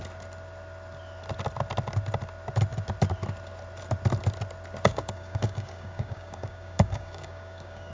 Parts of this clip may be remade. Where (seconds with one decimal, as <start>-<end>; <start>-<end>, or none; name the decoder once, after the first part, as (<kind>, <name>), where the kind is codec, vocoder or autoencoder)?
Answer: 4.9-7.9 (codec, DAC)